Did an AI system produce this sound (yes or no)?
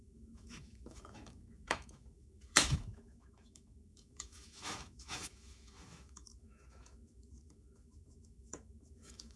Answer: yes